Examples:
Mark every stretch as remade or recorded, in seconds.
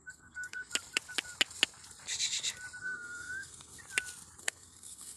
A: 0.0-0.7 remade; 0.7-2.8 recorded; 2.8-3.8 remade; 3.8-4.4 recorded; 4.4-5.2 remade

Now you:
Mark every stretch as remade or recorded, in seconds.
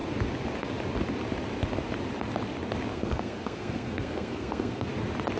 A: 0.0-2.9 recorded; 2.9-4.9 remade; 4.9-5.4 recorded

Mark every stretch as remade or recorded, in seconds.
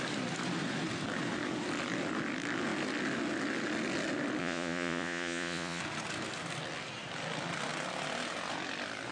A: 0.0-4.4 recorded; 4.4-5.8 remade; 5.8-9.1 recorded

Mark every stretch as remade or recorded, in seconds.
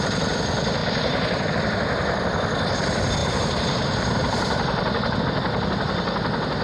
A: 0.0-0.8 recorded; 0.8-1.5 remade; 1.5-3.2 recorded; 3.2-5.2 remade; 5.2-6.6 recorded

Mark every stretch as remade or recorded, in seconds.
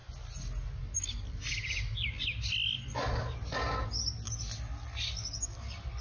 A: 0.0-6.0 recorded